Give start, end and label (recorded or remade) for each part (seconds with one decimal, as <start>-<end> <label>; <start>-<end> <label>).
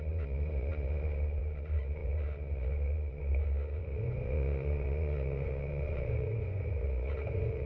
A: 0.0-7.7 remade